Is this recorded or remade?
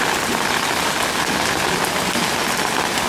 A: recorded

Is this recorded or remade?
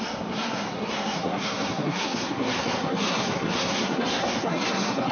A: remade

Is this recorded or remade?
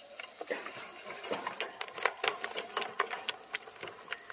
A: recorded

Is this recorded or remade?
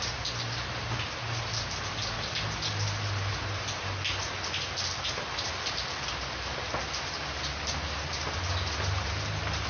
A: recorded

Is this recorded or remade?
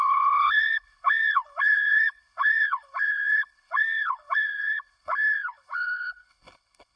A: remade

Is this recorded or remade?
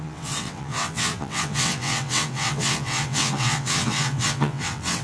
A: remade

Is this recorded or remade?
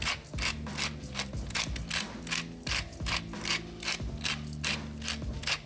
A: recorded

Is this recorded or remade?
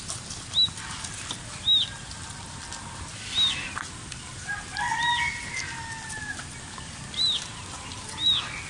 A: recorded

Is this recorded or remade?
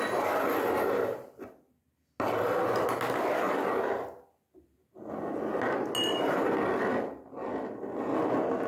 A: recorded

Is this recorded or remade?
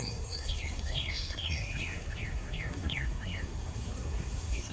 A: remade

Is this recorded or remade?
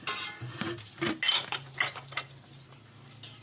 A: recorded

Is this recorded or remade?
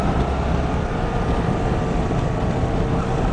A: recorded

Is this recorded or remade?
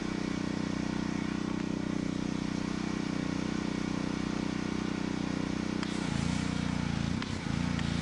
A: recorded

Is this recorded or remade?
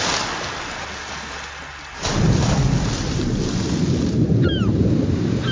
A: recorded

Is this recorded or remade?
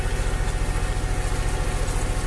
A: recorded